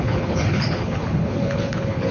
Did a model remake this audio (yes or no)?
yes